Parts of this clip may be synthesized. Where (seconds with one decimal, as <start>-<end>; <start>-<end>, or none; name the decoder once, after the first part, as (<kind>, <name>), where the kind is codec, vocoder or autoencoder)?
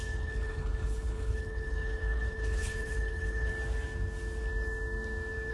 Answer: 0.0-3.5 (codec, HILCodec)